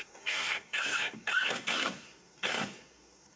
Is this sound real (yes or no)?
no